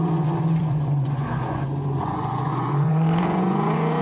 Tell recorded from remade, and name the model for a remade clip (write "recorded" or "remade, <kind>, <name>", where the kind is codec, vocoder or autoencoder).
remade, vocoder, Vocos